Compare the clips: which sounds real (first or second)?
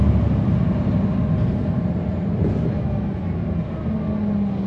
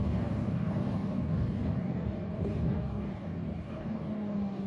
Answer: first